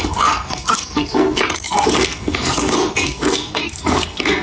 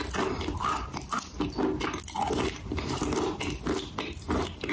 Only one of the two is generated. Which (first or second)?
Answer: first